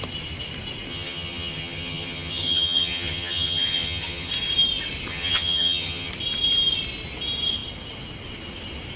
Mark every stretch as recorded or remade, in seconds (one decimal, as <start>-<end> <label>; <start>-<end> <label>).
0.0-0.9 recorded; 0.9-4.3 remade; 4.3-5.1 recorded; 5.1-6.1 remade; 6.1-9.0 recorded